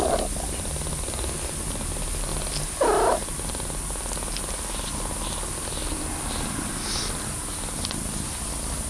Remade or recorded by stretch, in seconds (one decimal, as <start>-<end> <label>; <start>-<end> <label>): 0.0-8.9 recorded